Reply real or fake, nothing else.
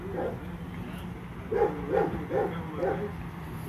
real